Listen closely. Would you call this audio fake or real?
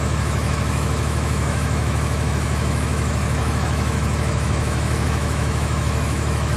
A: fake